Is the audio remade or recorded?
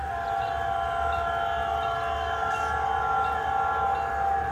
recorded